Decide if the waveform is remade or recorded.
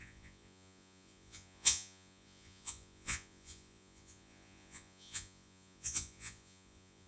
remade